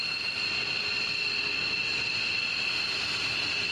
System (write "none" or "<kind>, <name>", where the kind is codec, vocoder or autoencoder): none